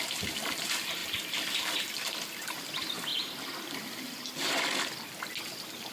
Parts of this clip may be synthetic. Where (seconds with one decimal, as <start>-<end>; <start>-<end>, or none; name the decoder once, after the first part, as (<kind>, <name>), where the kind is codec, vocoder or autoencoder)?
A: none

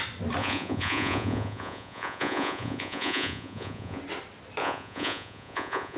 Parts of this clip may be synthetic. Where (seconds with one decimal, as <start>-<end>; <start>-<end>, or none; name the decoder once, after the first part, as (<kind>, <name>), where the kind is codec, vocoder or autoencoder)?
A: 0.4-4.0 (vocoder, Vocos); 4.6-6.0

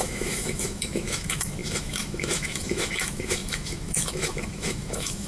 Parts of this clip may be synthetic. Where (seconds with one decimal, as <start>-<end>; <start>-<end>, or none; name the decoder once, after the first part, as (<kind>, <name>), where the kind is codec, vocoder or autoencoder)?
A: 0.0-5.3 (autoencoder, DAC-VAE)

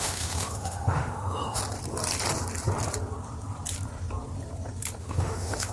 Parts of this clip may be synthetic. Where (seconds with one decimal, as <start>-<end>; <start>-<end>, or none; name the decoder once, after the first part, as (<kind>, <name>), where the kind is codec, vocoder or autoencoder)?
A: 0.0-1.6 (autoencoder, DAC-VAE); 5.0-5.7

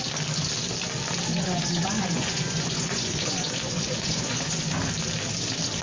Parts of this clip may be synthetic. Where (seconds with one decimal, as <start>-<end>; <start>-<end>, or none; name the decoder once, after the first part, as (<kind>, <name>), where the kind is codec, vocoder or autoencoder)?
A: 1.3-4.8 (vocoder, Vocos)

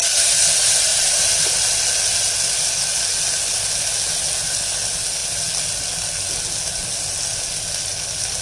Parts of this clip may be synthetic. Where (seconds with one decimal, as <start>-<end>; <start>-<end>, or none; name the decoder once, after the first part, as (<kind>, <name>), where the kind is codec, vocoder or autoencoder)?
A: none

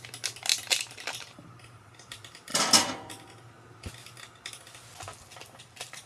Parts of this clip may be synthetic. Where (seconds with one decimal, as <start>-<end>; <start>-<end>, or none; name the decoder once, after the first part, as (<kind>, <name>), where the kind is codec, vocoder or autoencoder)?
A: 0.5-1.9 (vocoder, BigVGAN v2); 2.5-3.4

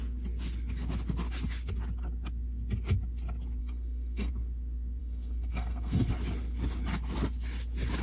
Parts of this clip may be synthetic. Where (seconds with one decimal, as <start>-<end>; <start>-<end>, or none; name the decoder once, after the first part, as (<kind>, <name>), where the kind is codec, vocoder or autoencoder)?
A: 3.6-4.3 (codec, SNAC); 5.0-6.1